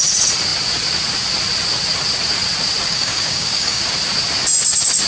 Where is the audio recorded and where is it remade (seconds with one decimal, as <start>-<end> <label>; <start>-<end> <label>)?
0.0-2.9 recorded; 2.9-3.8 remade; 3.8-5.1 recorded

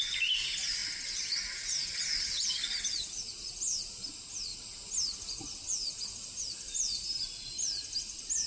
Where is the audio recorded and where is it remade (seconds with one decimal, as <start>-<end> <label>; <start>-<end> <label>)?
0.0-8.5 recorded

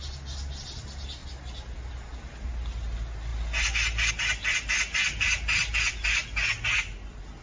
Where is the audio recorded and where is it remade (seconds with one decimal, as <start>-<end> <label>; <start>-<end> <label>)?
0.0-7.4 recorded

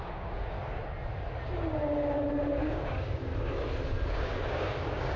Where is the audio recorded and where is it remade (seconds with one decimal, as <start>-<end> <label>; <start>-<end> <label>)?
0.0-0.8 remade; 0.8-2.5 recorded; 2.5-3.3 remade; 3.3-4.1 recorded; 4.1-5.2 remade

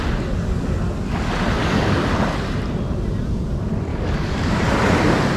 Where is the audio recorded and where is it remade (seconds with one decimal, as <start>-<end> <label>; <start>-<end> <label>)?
0.0-1.6 recorded; 1.6-2.1 remade; 2.1-3.9 recorded; 3.9-4.7 remade; 4.7-5.4 recorded

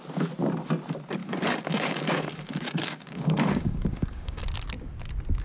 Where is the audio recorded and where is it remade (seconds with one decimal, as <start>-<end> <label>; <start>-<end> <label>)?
0.0-1.2 recorded; 1.2-4.4 remade; 4.4-5.4 recorded

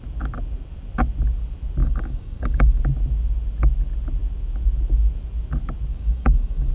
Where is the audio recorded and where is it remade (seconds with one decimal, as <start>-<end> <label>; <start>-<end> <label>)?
0.0-1.8 recorded; 1.8-2.8 remade; 2.8-5.9 recorded; 5.9-6.7 remade